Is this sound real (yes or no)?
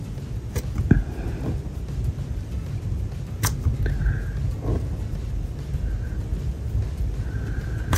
yes